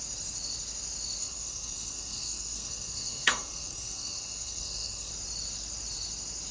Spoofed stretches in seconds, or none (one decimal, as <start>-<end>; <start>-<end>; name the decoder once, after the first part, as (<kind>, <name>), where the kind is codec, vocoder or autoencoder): 1.2-5.1 (codec, SNAC)